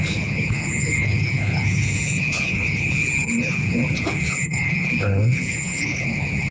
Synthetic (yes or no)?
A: yes